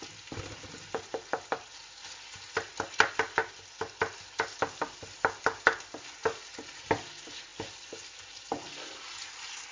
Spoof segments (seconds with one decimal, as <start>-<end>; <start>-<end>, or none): 7.5-8.2